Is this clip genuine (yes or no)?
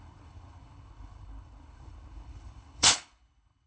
no